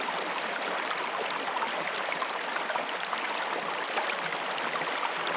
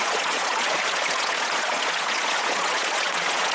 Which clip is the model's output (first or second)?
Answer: second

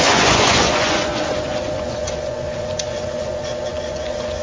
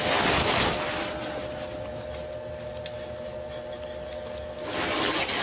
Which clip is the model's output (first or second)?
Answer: first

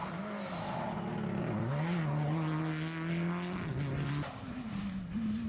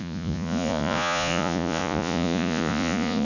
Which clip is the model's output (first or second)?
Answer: second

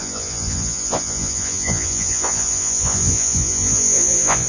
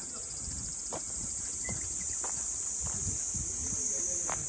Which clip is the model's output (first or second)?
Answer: first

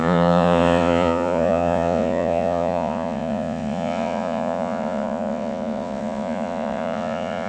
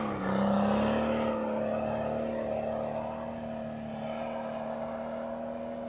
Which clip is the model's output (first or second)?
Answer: first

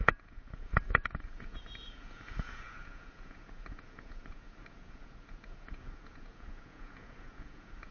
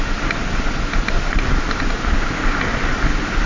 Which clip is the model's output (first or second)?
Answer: first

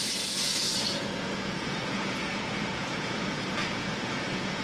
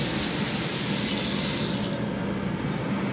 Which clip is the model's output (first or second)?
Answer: first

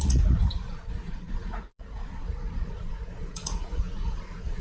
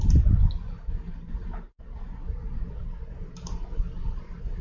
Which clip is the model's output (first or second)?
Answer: first